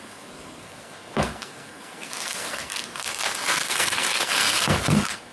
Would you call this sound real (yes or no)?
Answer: no